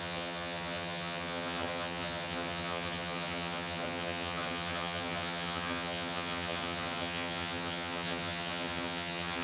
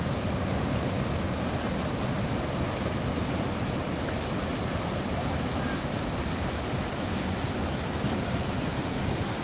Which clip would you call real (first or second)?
second